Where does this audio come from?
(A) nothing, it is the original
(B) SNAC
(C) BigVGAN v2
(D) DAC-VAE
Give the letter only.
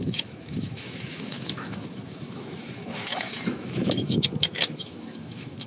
D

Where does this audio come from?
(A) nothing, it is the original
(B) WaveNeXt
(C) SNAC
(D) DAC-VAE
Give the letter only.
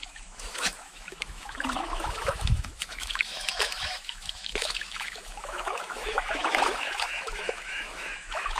D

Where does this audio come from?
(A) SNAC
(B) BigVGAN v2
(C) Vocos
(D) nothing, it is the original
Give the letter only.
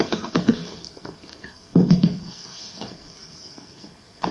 A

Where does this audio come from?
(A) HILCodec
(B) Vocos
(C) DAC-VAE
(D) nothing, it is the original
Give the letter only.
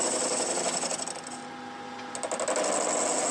D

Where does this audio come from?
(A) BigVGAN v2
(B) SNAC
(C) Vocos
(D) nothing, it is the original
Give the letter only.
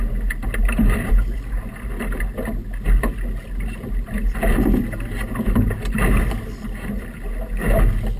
D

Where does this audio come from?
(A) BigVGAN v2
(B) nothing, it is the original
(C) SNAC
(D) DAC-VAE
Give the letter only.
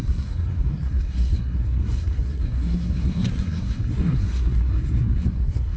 C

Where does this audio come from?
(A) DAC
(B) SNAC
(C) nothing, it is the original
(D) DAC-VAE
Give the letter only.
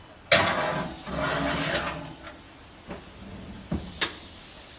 C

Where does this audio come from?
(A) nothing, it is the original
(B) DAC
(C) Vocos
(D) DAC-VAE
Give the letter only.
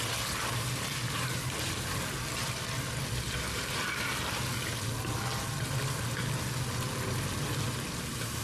A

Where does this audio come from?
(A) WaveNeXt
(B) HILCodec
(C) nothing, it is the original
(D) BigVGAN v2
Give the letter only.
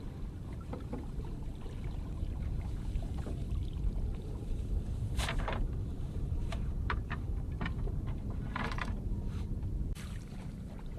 D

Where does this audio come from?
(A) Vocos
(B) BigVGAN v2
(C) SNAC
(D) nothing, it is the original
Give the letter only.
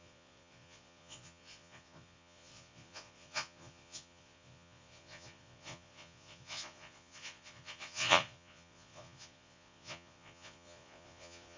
A